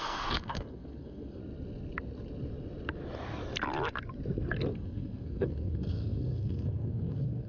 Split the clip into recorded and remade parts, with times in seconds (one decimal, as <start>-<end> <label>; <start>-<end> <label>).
0.0-1.4 remade; 1.4-4.7 recorded; 4.7-7.5 remade